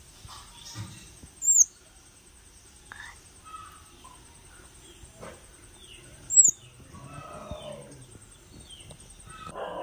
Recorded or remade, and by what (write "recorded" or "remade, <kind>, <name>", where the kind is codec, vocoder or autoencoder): recorded